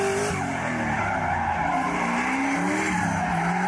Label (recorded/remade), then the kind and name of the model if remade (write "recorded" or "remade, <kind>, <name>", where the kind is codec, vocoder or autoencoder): recorded